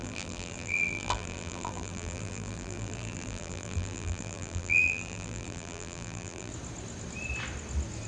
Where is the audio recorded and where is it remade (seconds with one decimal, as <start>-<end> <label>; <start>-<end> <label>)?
0.0-6.5 remade; 6.5-8.1 recorded